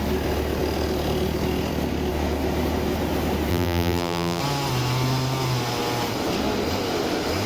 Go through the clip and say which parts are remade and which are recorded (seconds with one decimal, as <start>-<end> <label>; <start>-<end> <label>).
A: 0.0-3.5 recorded; 3.5-4.4 remade; 4.4-7.5 recorded